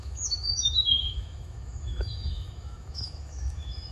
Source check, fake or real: fake